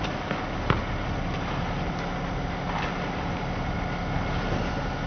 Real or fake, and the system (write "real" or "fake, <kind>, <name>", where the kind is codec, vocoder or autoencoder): real